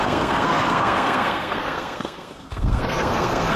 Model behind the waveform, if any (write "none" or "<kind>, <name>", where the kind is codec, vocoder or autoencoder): codec, SNAC